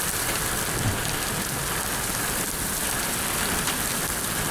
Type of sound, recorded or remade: recorded